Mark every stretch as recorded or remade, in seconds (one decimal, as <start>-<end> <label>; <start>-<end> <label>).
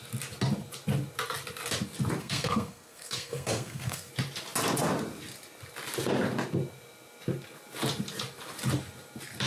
0.0-2.2 recorded; 2.2-4.1 remade; 4.1-9.5 recorded